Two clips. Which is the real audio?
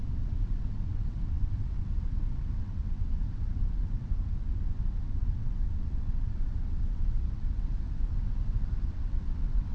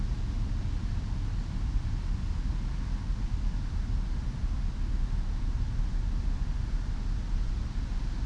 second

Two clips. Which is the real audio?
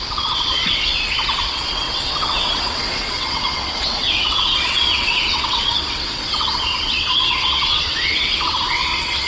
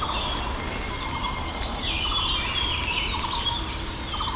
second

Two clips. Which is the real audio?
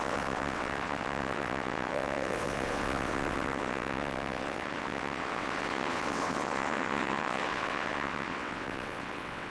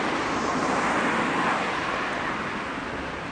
second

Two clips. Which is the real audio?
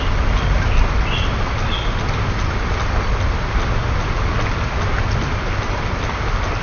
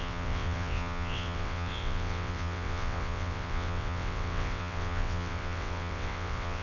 first